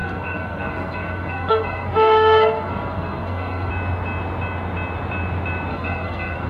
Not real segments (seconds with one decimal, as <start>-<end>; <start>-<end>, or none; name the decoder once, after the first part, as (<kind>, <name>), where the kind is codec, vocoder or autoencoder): 0.0-3.7 (codec, SNAC); 5.7-6.5